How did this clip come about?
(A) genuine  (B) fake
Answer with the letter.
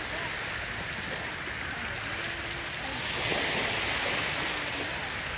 A